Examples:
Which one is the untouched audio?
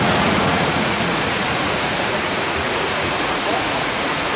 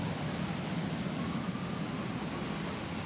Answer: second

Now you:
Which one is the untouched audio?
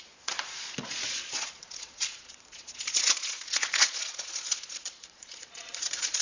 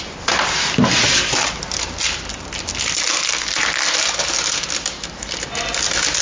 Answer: second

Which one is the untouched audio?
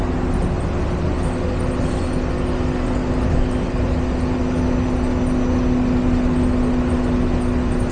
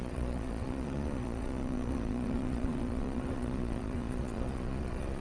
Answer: first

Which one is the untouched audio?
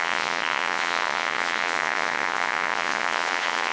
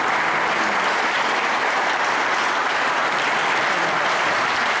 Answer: second